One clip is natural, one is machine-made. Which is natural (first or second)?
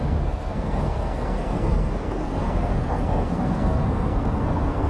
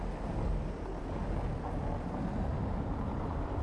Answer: second